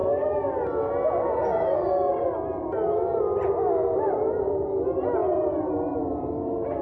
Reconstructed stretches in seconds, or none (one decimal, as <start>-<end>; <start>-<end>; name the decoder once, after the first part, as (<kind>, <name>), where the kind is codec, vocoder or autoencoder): 5.2-6.0 (vocoder, BigVGAN v2)